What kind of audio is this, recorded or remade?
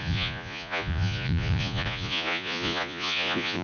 remade